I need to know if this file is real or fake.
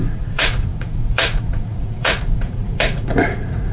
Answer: fake